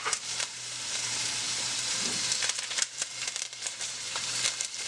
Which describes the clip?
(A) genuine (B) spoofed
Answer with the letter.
B